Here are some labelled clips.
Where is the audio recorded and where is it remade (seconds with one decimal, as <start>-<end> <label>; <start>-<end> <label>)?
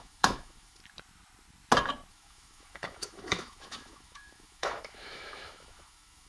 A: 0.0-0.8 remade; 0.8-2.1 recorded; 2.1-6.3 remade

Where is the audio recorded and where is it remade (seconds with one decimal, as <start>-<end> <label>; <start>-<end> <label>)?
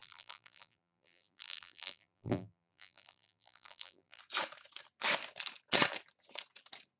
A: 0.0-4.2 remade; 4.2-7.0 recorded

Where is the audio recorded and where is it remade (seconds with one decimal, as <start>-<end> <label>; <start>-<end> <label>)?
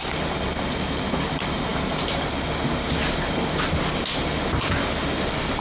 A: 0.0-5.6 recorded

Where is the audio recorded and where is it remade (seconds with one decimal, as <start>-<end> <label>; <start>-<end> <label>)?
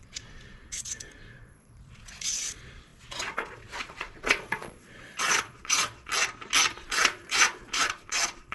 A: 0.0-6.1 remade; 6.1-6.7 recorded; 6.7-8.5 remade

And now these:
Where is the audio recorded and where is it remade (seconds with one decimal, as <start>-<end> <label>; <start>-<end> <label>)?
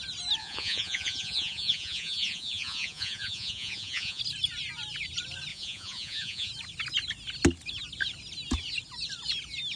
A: 0.0-0.4 recorded; 0.4-4.2 remade; 4.2-5.5 recorded; 5.5-6.5 remade; 6.5-9.8 recorded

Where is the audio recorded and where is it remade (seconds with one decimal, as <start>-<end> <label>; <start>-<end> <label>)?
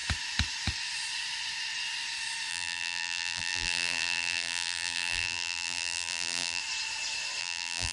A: 0.0-2.5 recorded; 2.5-6.6 remade; 6.6-7.4 recorded; 7.4-7.9 remade